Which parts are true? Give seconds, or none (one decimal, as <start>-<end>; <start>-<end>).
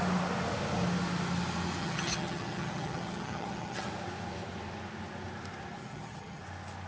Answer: 0.0-1.8; 3.9-5.8; 6.4-6.9